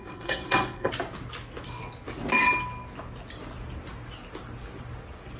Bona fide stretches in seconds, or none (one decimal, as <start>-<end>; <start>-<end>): 0.9-5.4